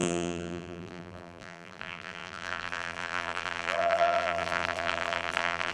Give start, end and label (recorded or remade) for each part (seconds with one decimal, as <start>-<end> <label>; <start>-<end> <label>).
0.0-5.7 remade